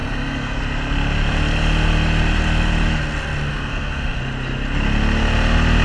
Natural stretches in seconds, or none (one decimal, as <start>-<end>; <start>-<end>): 0.6-3.5; 4.2-5.8